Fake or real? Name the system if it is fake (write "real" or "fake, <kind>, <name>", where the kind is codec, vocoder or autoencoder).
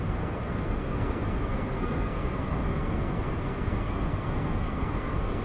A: fake, codec, SNAC